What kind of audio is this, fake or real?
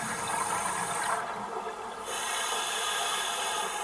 real